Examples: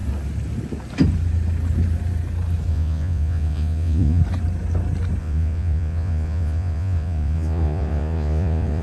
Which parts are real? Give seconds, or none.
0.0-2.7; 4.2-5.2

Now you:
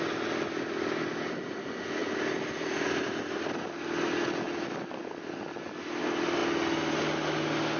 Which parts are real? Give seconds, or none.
0.0-7.8